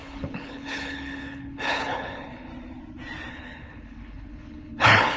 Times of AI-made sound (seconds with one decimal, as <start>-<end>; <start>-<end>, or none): 0.0-2.5; 3.3-5.2